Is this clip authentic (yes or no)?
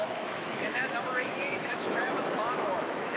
no